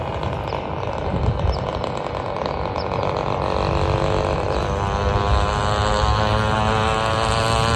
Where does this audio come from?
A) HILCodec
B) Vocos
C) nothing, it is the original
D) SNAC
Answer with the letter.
C